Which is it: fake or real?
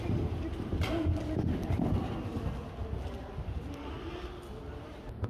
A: real